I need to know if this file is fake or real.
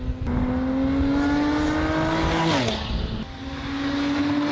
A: real